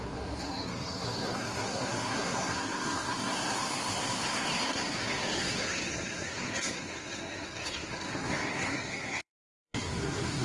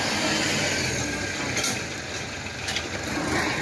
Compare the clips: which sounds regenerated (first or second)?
first